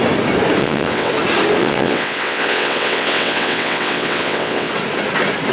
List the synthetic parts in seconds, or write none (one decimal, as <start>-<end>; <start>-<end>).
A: 0.6-1.1; 1.6-4.7